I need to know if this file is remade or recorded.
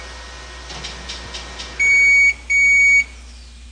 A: recorded